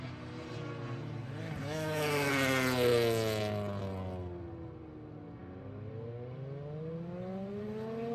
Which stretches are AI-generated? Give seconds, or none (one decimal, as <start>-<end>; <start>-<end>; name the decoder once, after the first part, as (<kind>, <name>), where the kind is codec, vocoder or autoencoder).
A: 1.6-2.3 (autoencoder, DAC-VAE)